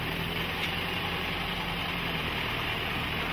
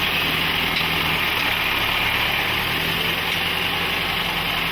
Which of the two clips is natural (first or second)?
second